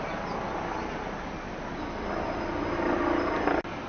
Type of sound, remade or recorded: recorded